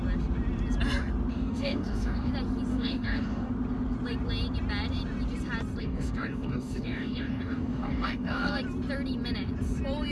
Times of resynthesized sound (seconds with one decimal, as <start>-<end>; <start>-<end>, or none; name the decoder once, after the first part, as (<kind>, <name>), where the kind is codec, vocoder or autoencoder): 1.3-2.3 (codec, DAC); 2.7-3.5; 5.8-8.5